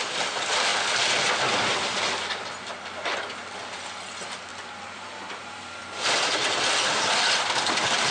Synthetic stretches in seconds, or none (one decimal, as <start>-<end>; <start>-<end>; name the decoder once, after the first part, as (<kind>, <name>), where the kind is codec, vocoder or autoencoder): 0.0-0.7 (vocoder, BigVGAN v2); 2.6-5.8; 6.9-8.1